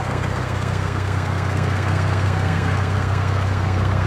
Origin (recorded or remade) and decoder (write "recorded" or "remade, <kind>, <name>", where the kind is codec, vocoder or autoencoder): remade, codec, SNAC